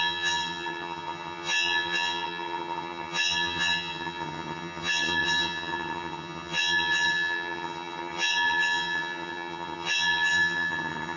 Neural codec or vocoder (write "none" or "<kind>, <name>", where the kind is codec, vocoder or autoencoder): vocoder, HiFi-GAN